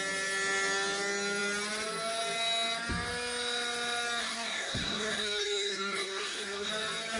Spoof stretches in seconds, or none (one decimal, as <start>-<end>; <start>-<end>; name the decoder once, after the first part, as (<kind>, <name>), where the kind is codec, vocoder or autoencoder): 4.2-6.7 (codec, SNAC)